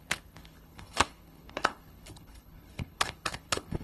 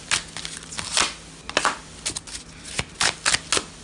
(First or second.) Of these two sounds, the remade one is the first